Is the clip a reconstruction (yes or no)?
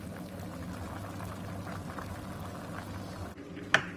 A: no